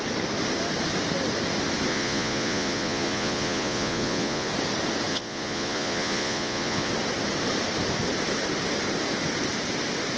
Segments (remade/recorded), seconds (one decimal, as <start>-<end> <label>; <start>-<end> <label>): 0.0-1.9 recorded; 1.9-4.5 remade; 4.5-5.1 recorded; 5.1-6.9 remade; 6.9-10.2 recorded